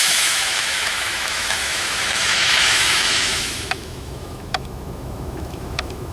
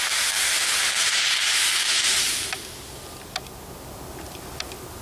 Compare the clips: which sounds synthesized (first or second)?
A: first